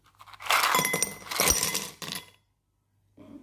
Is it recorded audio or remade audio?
recorded